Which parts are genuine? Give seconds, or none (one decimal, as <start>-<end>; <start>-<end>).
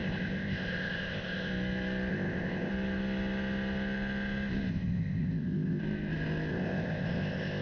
1.5-2.1; 2.7-4.7; 5.8-6.5